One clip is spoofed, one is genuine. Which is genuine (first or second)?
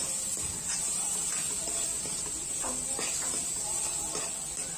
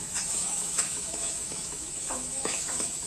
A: first